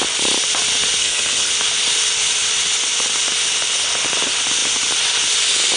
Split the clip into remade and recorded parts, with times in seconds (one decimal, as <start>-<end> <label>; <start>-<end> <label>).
0.0-1.0 recorded; 1.0-1.5 remade; 1.5-5.8 recorded